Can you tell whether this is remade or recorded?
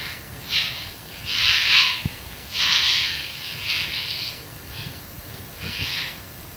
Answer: remade